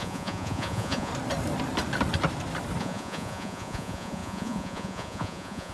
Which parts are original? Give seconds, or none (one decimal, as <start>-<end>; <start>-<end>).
1.1-2.8